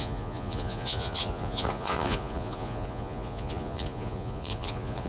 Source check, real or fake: fake